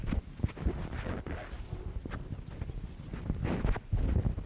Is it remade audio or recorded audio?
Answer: recorded